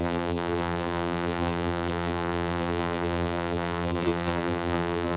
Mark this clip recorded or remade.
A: remade